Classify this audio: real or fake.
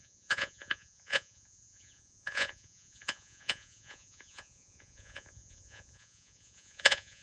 fake